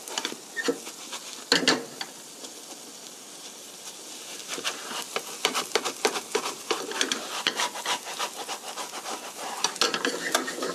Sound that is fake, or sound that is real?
real